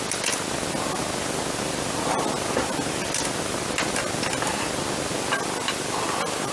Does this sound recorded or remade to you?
recorded